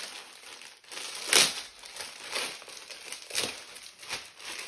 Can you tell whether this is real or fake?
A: real